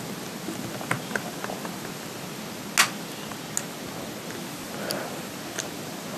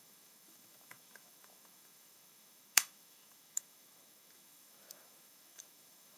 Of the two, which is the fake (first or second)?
second